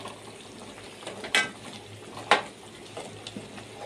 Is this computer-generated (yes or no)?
no